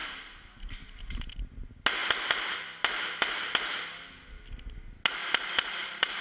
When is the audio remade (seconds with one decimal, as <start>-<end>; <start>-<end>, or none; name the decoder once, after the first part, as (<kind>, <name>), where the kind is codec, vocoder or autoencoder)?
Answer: 5.2-6.2 (vocoder, BigVGAN v2)